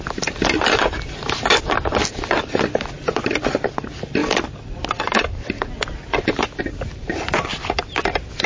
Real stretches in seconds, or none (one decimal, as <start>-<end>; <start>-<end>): 0.0-8.5